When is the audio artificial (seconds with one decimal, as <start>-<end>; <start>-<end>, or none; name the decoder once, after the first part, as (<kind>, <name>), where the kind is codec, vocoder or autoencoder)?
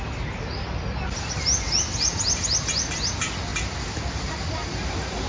none